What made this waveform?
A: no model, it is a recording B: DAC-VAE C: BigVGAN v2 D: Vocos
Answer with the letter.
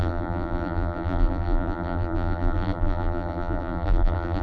C